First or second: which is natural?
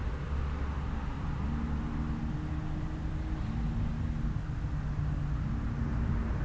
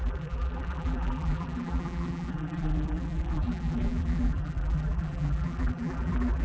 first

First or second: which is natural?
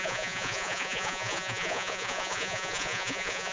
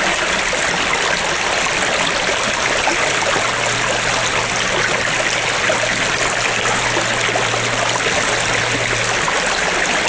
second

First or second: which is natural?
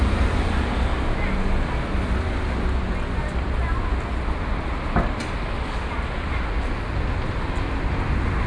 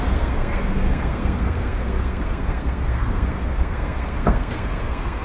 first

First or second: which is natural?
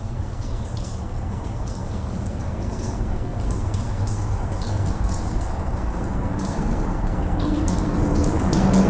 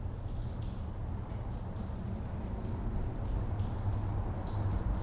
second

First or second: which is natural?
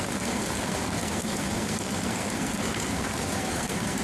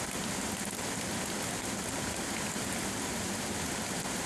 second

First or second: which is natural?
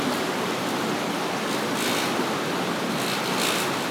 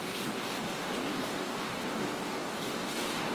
first